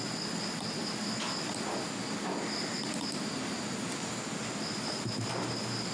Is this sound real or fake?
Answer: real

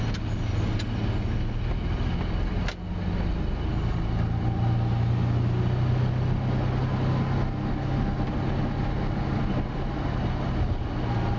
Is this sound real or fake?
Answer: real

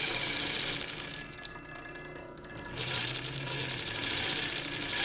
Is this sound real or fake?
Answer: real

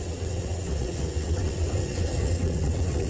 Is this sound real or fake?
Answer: fake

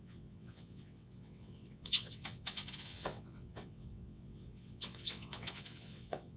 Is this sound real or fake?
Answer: fake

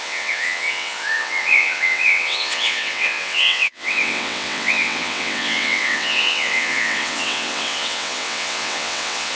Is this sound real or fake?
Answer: fake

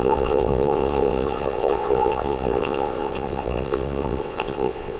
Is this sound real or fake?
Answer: fake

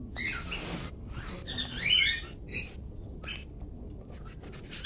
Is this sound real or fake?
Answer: real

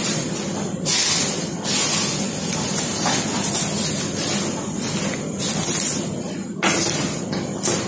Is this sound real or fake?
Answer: real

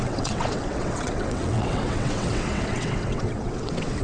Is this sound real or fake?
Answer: fake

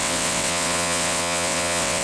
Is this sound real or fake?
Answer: fake